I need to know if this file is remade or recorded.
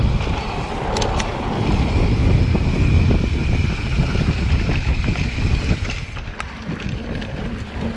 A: recorded